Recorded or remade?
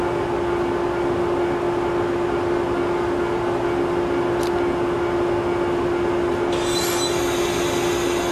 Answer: recorded